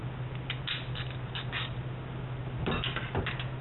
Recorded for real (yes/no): yes